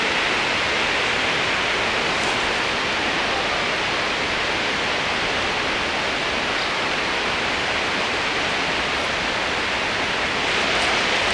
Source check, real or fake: real